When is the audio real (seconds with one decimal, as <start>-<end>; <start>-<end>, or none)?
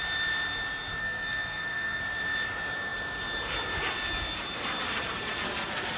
0.0-1.0; 2.0-6.0